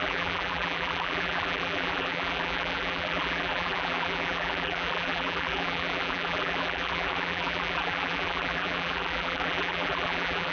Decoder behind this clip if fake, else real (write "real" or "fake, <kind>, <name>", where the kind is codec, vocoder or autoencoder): fake, vocoder, BigVGAN v2